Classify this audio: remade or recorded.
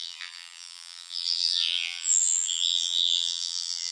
remade